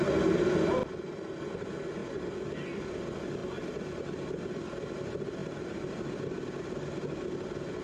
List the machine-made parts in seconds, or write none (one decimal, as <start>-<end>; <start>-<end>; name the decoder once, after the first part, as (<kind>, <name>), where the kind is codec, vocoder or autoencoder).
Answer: 0.8-1.4 (vocoder, BigVGAN v2); 2.0-2.9